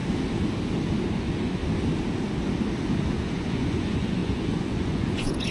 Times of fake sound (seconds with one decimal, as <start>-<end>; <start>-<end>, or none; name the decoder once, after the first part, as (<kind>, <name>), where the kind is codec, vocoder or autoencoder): 1.1-1.6 (vocoder, Vocos); 3.1-5.5